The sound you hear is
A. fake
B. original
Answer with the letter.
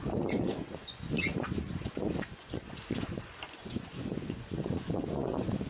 A